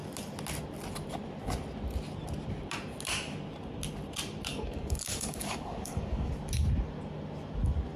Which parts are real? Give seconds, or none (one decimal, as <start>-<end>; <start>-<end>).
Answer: 0.0-4.5; 6.3-8.0